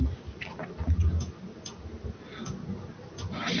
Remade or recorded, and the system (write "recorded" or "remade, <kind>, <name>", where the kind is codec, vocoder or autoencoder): recorded